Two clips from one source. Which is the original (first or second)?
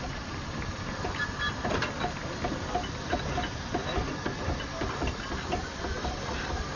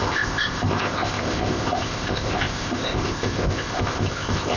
first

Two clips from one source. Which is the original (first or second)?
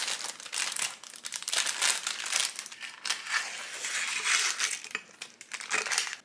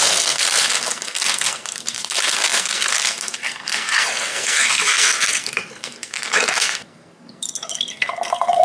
first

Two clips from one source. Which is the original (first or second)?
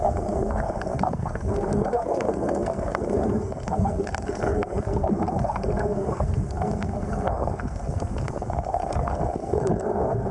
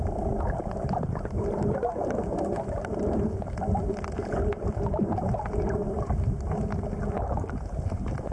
second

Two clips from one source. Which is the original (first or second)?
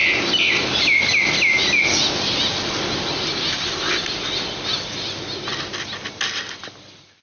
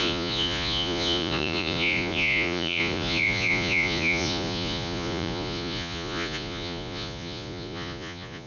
first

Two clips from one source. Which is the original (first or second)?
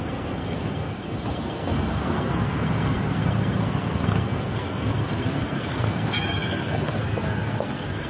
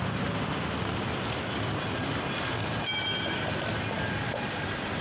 second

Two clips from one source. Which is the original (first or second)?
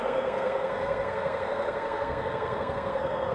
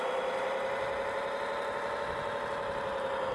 second